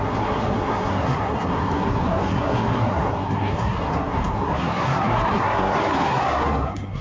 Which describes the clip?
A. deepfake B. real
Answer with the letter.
A